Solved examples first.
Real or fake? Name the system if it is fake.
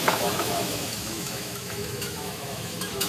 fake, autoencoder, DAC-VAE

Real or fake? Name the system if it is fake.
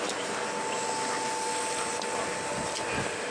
real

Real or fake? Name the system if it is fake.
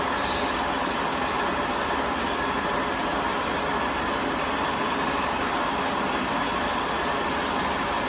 real